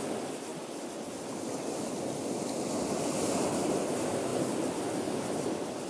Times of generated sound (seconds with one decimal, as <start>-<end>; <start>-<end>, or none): 0.5-1.7